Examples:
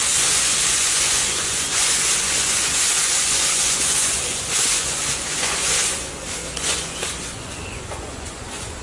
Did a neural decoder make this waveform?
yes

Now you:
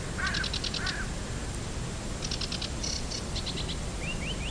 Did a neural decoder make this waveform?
no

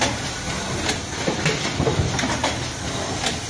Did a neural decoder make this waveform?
no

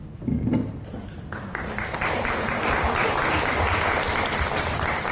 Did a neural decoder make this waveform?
no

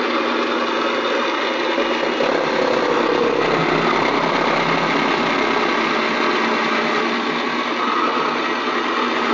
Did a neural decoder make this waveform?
no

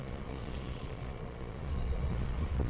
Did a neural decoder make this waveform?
yes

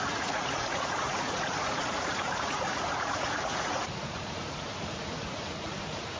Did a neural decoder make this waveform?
yes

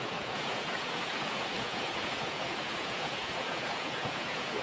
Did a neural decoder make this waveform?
yes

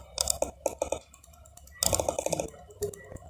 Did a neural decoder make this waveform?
no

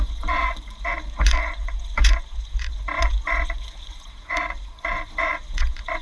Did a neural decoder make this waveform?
yes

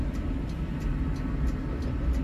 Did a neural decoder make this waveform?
no